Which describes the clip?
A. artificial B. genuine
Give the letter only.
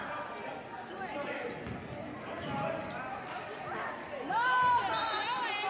B